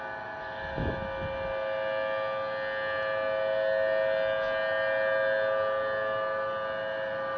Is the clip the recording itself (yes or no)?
yes